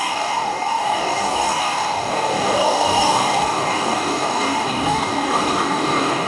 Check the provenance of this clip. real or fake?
fake